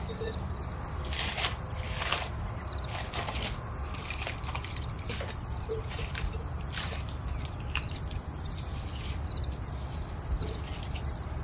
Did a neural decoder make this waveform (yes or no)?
yes